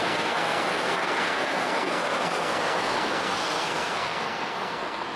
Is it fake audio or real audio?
fake